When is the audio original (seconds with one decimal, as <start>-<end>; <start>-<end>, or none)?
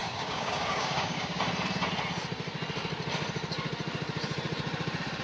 1.4-5.2